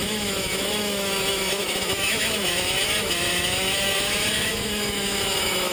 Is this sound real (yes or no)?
no